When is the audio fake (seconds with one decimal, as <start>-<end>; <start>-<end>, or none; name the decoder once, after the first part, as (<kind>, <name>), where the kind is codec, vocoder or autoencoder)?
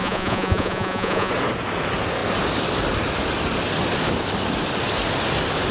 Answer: 0.0-1.3 (vocoder, Vocos)